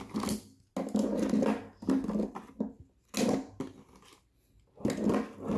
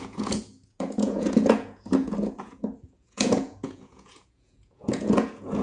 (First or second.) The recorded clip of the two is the first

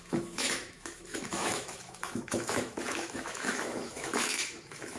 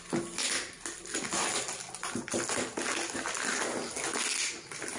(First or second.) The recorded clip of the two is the second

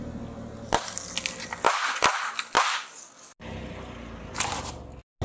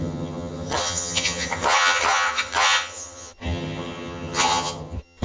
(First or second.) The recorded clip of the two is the first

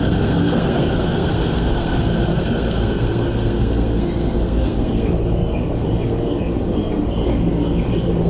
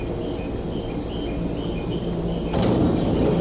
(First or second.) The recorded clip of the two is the second